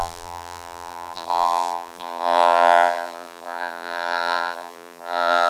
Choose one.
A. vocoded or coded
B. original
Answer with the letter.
A